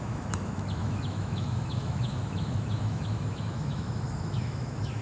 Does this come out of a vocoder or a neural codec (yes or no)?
yes